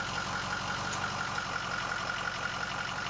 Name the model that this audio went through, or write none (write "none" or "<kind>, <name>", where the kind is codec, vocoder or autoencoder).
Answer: none